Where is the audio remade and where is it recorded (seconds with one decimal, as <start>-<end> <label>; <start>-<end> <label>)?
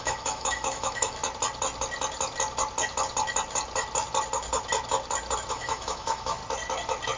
0.0-1.2 remade; 1.2-5.5 recorded; 5.5-6.4 remade; 6.4-7.2 recorded